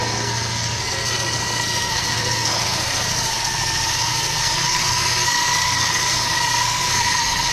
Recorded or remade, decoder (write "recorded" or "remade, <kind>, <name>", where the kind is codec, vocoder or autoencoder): remade, codec, SNAC